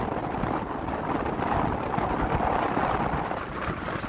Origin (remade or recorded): recorded